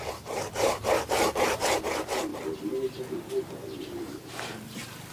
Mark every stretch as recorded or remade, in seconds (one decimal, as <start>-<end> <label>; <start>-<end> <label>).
0.0-2.3 remade; 2.3-3.5 recorded; 3.5-5.1 remade